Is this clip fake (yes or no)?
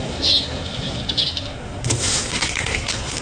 yes